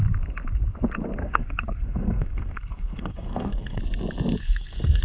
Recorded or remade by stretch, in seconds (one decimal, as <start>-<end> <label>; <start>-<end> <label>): 0.0-1.2 recorded; 1.2-3.8 remade; 3.8-4.4 recorded; 4.4-5.0 remade